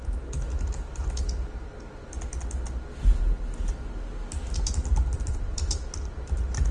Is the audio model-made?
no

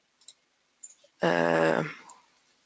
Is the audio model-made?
no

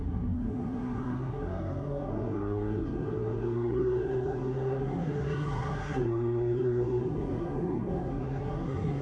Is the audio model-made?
yes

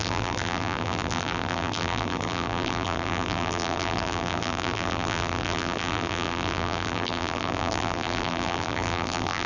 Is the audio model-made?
yes